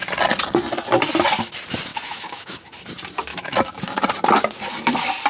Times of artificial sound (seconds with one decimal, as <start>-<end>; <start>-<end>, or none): 1.9-2.6; 3.3-4.0